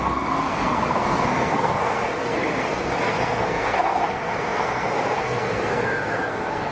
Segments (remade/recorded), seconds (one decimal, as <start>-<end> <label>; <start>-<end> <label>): 0.0-6.7 remade